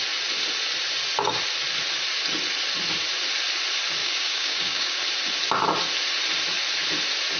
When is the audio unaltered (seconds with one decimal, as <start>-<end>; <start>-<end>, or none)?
0.0-4.0; 5.0-7.4